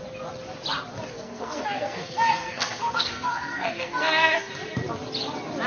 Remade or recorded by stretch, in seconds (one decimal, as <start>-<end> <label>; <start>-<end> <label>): 0.0-1.1 recorded; 1.1-4.5 remade; 4.5-5.7 recorded